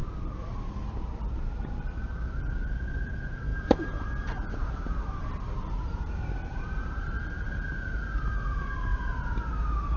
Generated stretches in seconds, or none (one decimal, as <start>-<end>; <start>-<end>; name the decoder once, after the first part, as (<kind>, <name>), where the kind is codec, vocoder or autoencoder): 0.0-8.9 (vocoder, BigVGAN v2); 9.5-10.0